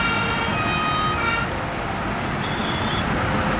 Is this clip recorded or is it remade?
recorded